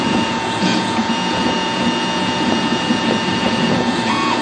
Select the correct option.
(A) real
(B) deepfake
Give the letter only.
B